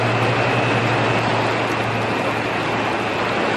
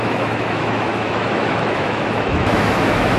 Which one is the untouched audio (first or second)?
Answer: first